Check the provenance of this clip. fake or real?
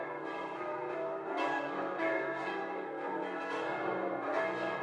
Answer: fake